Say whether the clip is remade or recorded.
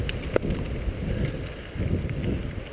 recorded